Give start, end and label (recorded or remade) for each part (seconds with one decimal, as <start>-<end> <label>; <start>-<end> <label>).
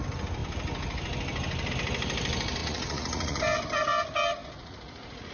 0.0-2.6 recorded; 2.6-3.4 remade; 3.4-4.4 recorded; 4.4-5.3 remade